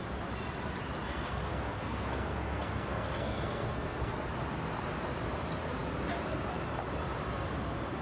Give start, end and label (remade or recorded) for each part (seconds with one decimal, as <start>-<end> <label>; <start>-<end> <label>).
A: 0.0-1.1 recorded; 1.1-4.2 remade; 4.2-8.0 recorded